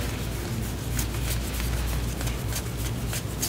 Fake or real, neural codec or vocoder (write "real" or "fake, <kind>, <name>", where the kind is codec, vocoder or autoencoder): real